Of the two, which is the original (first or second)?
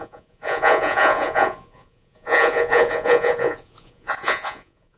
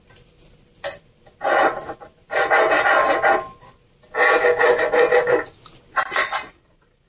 second